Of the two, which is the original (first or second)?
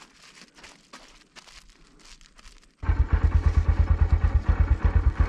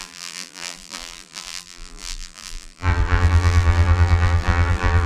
first